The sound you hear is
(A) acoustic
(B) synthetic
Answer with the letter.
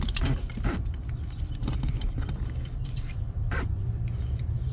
B